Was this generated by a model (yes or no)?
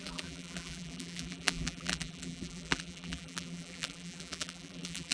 yes